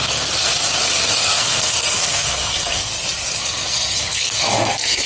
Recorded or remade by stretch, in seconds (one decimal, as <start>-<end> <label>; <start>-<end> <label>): 0.0-2.9 remade; 2.9-3.4 recorded; 3.4-5.1 remade